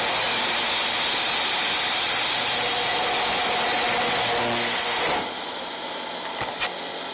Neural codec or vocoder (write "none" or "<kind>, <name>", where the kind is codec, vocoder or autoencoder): none